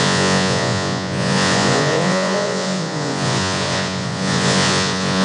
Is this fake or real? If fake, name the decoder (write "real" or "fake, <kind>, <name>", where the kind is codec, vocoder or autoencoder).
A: fake, vocoder, Vocos